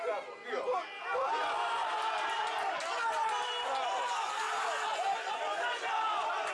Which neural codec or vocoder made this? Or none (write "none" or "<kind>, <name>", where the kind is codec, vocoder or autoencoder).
none